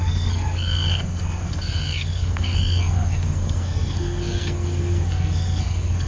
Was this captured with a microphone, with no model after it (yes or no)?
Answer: no